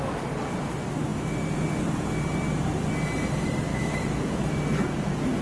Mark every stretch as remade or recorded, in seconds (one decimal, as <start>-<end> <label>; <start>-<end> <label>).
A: 0.0-3.7 recorded; 3.7-4.5 remade; 4.5-5.4 recorded